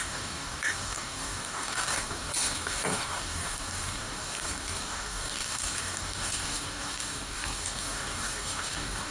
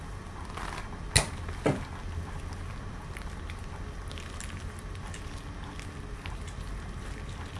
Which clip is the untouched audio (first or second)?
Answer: second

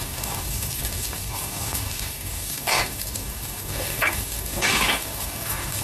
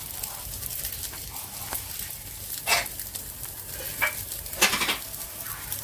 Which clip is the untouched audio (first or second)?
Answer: second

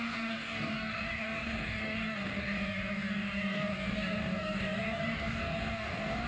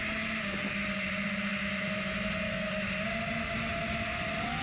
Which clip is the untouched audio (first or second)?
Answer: second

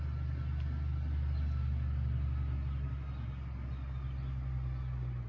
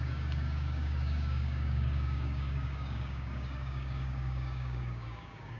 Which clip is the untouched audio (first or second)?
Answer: first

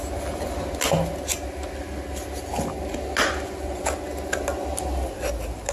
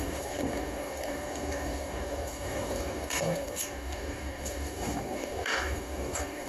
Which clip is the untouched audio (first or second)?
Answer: first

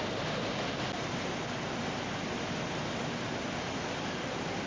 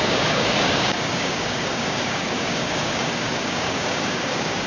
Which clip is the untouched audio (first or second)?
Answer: first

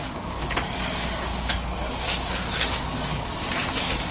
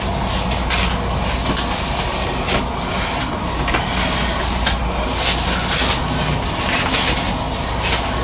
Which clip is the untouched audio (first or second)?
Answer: second